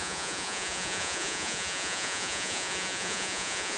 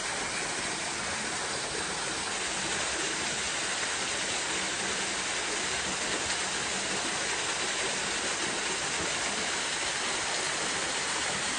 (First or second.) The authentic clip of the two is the second